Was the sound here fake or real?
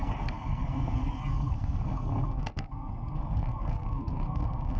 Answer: fake